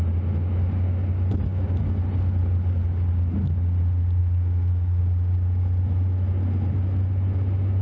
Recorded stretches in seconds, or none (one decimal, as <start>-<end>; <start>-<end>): 0.0-4.2; 5.0-7.8